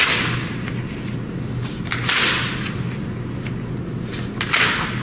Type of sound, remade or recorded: recorded